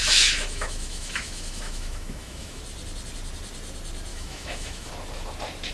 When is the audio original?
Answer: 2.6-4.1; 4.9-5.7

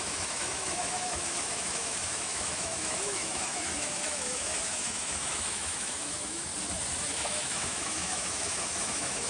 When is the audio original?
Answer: 6.5-7.1